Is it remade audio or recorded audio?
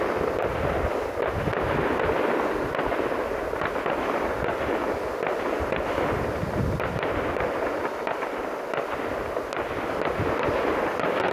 recorded